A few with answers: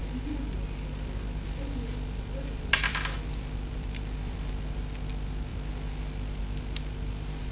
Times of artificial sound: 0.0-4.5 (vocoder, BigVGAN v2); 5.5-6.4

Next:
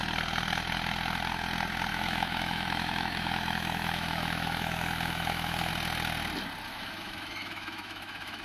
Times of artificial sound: 1.9-5.7 (autoencoder, DAC-VAE); 6.7-8.4

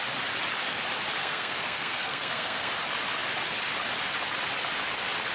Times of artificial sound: 1.2-2.7 (codec, SNAC)

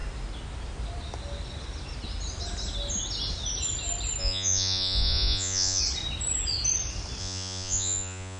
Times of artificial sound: 4.2-5.8 (vocoder, Vocos); 7.2-8.4

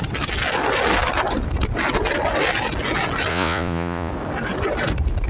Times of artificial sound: 3.3-4.1 (vocoder, Vocos)

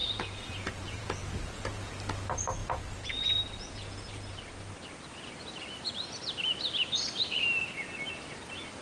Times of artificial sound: 0.0-1.9 (vocoder, Vocos); 2.6-4.1

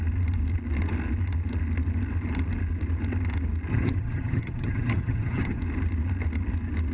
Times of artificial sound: 3.7-5.6 (vocoder, HiFi-GAN)

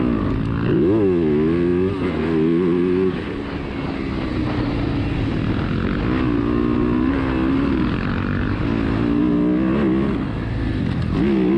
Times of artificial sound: none